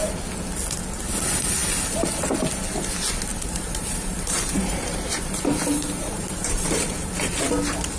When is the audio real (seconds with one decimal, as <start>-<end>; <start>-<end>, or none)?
0.0-3.3; 7.4-8.0